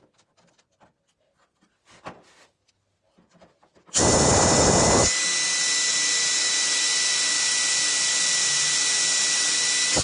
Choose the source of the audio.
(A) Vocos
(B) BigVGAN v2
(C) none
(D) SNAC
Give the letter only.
C